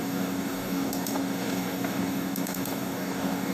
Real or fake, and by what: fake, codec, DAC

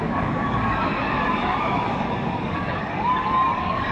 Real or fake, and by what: fake, codec, DAC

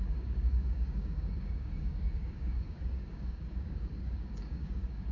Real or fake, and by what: fake, codec, DAC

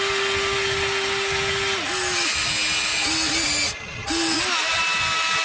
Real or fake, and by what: real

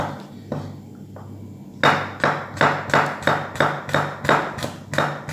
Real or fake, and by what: real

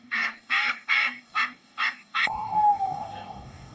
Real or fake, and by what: fake, codec, DAC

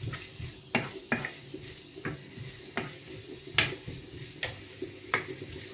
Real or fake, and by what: real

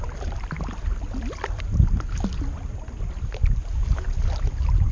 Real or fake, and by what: real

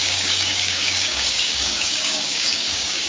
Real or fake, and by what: fake, codec, DAC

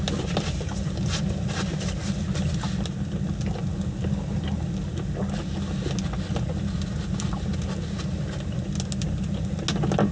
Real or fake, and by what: real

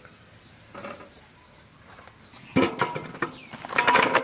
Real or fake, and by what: real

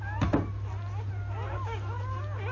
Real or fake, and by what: real